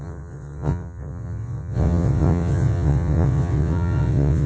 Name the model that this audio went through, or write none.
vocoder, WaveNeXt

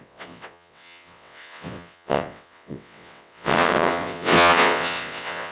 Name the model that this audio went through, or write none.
vocoder, WaveNeXt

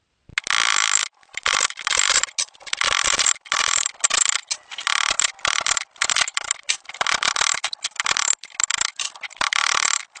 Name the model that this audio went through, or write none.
none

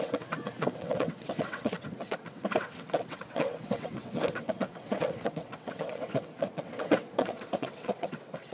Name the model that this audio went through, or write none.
vocoder, WaveNeXt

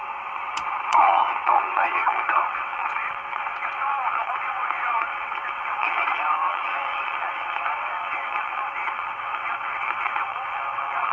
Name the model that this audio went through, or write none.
vocoder, WaveNeXt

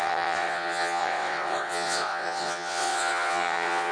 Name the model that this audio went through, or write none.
vocoder, WaveNeXt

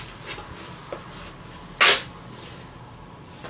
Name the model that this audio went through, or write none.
none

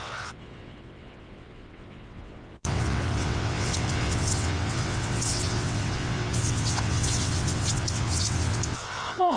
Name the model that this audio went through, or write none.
vocoder, WaveNeXt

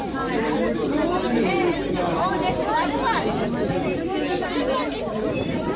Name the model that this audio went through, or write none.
none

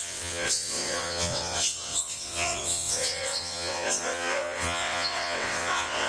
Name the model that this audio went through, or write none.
vocoder, WaveNeXt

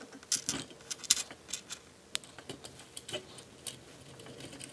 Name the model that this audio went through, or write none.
none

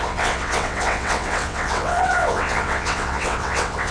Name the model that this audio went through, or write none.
vocoder, WaveNeXt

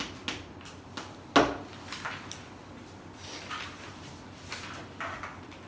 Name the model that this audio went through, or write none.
none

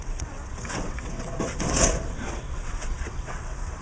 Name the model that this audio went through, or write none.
vocoder, WaveNeXt